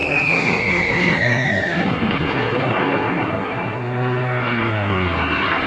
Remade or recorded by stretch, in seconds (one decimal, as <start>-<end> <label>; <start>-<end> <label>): 0.0-5.7 remade